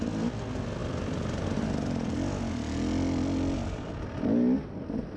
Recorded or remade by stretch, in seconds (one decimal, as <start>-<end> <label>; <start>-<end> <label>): 0.0-5.2 recorded